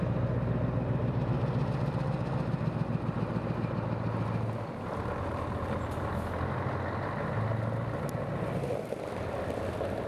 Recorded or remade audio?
recorded